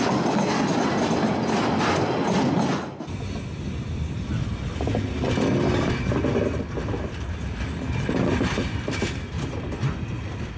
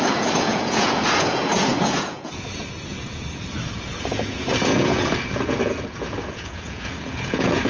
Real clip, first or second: first